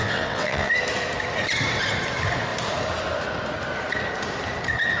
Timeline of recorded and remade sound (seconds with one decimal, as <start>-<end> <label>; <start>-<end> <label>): 0.0-0.7 remade; 0.7-5.0 recorded

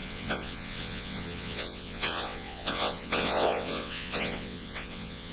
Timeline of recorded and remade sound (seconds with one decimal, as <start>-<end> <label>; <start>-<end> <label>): 0.0-5.3 remade

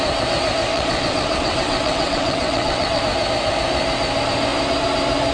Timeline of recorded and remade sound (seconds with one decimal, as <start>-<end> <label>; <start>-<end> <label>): 0.0-0.7 recorded; 0.7-3.0 remade; 3.0-5.3 recorded

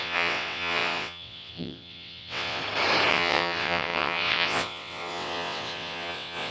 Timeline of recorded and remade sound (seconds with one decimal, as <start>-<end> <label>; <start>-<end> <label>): 0.0-2.6 remade; 2.6-3.1 recorded; 3.1-6.5 remade

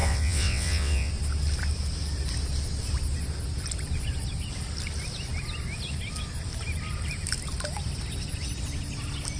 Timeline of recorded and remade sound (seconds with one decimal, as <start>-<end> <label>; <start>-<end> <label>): 0.0-1.1 remade; 1.1-9.4 recorded

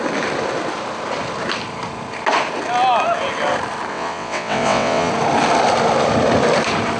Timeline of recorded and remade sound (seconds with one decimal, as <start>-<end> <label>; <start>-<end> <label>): 0.0-3.9 recorded; 3.9-5.1 remade; 5.1-7.0 recorded

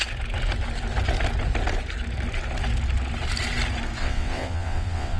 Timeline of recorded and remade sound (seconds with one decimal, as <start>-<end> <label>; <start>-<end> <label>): 0.0-4.0 recorded; 4.0-5.2 remade

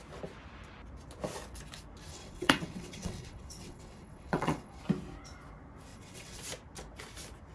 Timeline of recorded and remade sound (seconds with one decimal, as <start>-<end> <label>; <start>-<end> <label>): 0.0-2.1 recorded; 2.1-4.8 remade; 4.8-5.9 recorded; 5.9-6.4 remade; 6.4-7.5 recorded